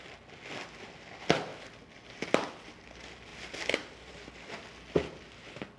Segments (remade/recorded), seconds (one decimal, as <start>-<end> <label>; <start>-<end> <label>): 0.0-5.8 recorded